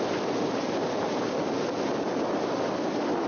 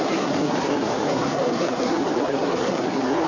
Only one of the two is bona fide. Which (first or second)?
first